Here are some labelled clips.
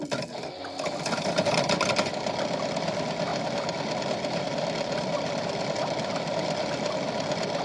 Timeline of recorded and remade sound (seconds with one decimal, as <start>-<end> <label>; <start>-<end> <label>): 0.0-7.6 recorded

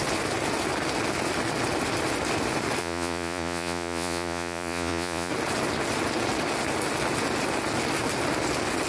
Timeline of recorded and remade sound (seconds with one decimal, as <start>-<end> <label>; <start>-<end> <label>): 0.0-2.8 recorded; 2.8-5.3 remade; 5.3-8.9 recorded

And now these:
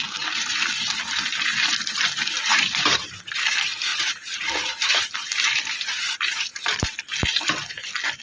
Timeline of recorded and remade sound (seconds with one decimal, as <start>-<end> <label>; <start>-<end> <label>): 0.0-2.5 recorded; 2.5-3.4 remade; 3.4-3.9 recorded; 3.9-6.6 remade; 6.6-8.2 recorded

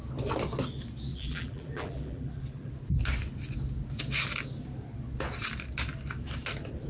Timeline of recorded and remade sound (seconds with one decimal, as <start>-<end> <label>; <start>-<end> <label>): 0.0-1.1 recorded; 1.1-2.7 remade; 2.7-6.9 recorded